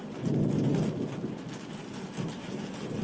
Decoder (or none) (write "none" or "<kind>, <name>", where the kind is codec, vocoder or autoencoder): none